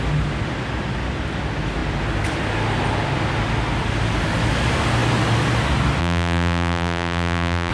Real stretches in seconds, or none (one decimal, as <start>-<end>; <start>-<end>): 0.0-6.0